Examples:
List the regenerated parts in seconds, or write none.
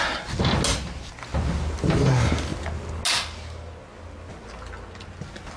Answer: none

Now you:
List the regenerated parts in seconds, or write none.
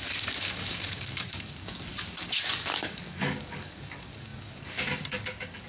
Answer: 0.0-5.7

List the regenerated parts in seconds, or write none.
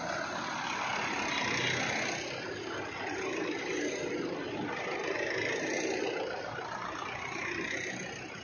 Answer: none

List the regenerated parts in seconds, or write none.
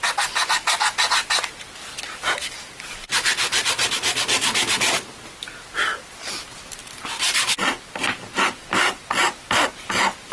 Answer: none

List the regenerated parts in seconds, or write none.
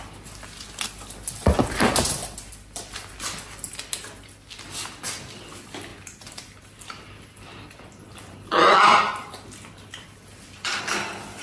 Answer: 2.2-3.4; 5.9-10.8